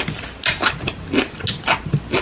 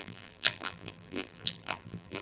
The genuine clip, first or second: first